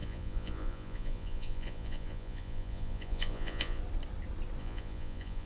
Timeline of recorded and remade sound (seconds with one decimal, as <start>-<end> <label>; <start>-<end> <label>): 0.0-3.8 remade; 3.8-4.6 recorded; 4.6-5.5 remade